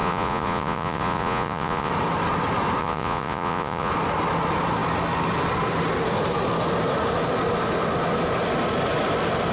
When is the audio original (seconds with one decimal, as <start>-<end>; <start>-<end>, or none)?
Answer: 1.9-2.8; 3.9-9.5